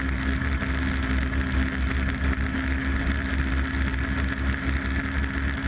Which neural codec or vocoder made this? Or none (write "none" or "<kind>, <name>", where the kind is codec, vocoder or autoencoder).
none